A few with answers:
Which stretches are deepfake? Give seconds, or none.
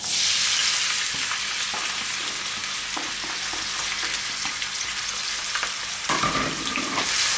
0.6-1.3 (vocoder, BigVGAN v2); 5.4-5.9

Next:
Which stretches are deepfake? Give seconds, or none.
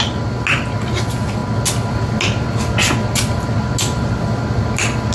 none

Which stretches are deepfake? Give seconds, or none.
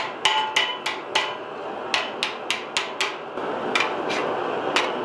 none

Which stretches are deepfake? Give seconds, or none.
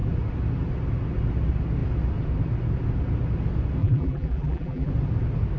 3.8-4.9 (vocoder, BigVGAN v2)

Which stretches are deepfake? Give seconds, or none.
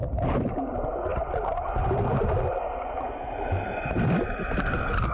none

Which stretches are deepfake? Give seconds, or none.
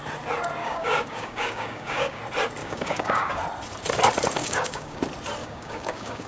0.6-2.2 (codec, DAC); 2.6-3.4; 4.4-5.0; 5.4-6.3